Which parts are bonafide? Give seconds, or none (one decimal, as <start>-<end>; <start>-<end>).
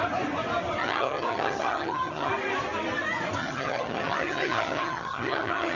0.0-0.8; 2.3-3.4